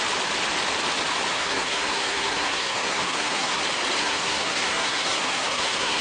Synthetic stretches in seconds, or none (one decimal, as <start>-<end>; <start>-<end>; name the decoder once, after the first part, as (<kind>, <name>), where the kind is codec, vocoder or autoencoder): 1.3-3.6 (codec, SNAC); 4.0-6.0